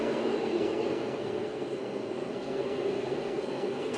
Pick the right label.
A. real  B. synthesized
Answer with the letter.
B